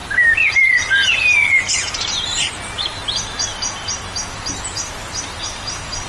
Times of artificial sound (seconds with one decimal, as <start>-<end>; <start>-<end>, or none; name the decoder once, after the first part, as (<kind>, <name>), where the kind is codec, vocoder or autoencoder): none